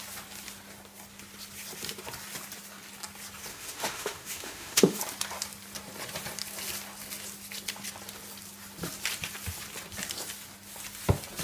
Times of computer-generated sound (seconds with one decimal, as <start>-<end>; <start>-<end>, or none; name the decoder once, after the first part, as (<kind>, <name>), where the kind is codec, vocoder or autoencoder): 3.5-5.0 (autoencoder, DAC-VAE)